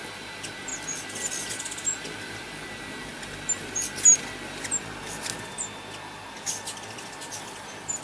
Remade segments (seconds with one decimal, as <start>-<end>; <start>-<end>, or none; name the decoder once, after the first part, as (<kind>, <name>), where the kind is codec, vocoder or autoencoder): none

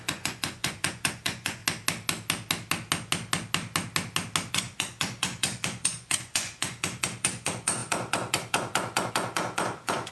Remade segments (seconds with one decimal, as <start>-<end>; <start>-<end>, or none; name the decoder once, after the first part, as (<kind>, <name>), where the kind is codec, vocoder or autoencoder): 0.0-1.6 (vocoder, Vocos); 4.5-10.1

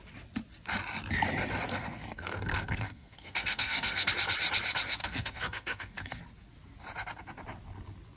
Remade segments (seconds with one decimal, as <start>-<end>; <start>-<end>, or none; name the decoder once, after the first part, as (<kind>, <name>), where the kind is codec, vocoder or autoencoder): 1.7-4.1 (codec, SNAC); 5.0-6.2

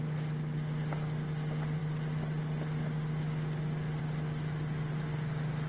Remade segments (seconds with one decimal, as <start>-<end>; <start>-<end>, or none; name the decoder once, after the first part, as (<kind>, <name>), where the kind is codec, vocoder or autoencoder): none

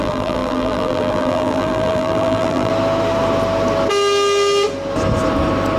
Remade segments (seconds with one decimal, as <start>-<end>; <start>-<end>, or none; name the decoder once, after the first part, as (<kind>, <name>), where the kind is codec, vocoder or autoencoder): 0.0-2.7 (vocoder, BigVGAN v2)